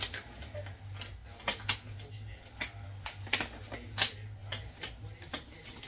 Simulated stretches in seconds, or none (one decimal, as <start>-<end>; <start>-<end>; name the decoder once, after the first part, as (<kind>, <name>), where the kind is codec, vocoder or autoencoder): 1.2-2.1 (vocoder, BigVGAN v2); 4.4-4.9